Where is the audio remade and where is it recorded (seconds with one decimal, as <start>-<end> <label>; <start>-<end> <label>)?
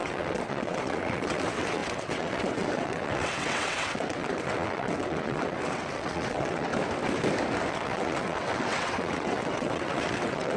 0.0-6.7 remade; 6.7-7.7 recorded; 7.7-10.6 remade